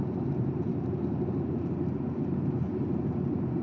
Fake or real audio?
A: fake